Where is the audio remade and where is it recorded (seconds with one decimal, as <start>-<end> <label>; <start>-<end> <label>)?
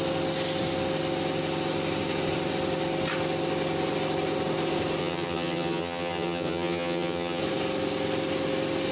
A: 0.0-5.0 recorded; 5.0-7.4 remade; 7.4-8.9 recorded